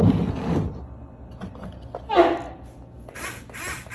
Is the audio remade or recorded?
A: recorded